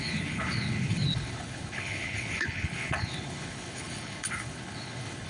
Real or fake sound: fake